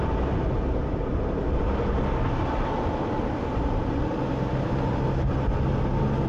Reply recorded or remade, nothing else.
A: recorded